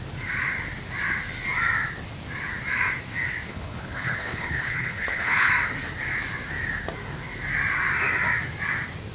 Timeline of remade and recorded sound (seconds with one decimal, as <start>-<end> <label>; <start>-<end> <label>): 0.0-3.5 recorded; 3.5-5.5 remade; 5.5-9.1 recorded